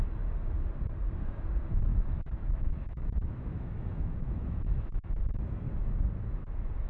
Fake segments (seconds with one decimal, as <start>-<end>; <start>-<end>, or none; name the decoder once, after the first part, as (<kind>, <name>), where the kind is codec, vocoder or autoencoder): 1.9-5.7 (autoencoder, DAC-VAE)